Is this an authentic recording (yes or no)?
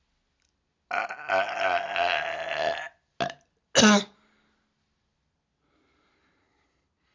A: yes